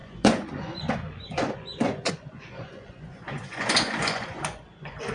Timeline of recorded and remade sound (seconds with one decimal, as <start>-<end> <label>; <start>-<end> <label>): 0.0-5.1 remade